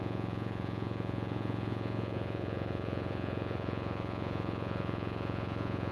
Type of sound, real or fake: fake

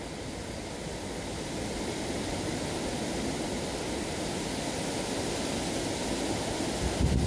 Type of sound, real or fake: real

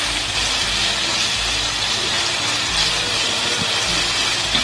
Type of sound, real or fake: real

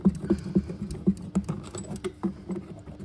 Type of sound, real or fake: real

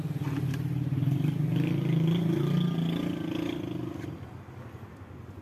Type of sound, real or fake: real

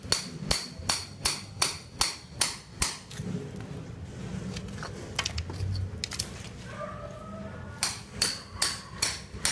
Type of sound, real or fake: real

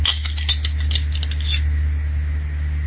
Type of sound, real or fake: real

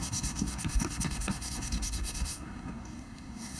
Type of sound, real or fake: fake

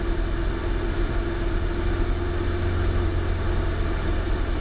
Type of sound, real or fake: real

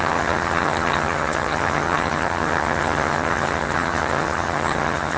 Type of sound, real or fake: fake